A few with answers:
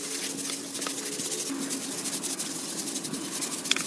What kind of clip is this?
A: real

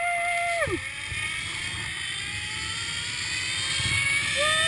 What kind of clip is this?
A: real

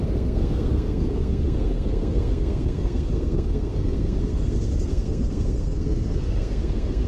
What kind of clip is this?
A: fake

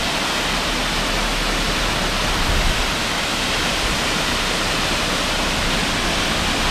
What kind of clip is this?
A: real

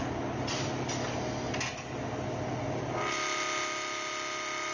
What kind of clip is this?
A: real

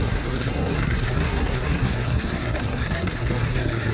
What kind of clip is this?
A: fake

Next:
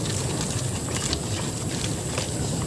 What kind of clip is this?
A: real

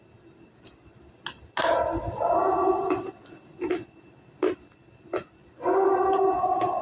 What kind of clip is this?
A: real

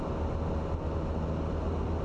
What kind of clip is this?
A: real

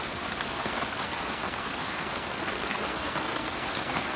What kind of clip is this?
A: fake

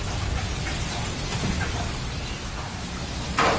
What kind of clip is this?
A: real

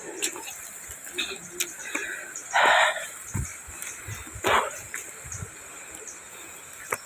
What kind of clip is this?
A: real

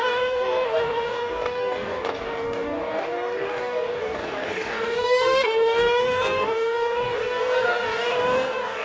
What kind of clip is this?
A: fake